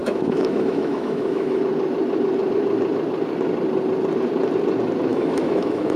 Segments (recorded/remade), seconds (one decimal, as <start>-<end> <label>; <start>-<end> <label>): 0.0-1.6 remade; 1.6-5.1 recorded; 5.1-6.0 remade

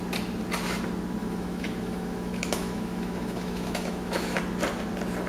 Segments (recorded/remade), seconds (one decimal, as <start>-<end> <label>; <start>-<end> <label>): 0.0-1.2 recorded; 1.2-4.4 remade; 4.4-5.3 recorded